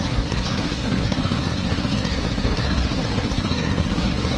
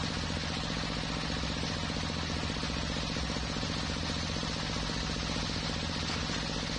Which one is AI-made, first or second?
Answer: first